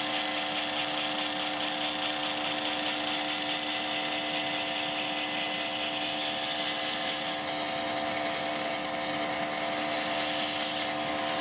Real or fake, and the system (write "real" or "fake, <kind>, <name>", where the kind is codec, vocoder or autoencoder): real